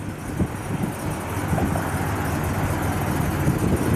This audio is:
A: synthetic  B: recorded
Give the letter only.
B